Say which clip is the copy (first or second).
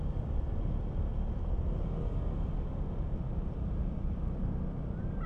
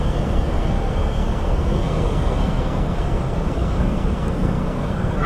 second